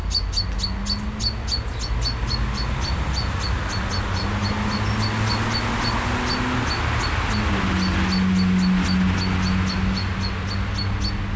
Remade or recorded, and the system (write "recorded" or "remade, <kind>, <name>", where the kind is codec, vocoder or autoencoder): recorded